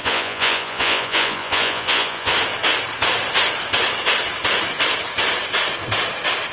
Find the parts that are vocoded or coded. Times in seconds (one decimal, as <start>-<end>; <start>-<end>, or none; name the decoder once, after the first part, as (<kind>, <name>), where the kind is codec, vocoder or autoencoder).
0.0-2.3 (vocoder, Vocos)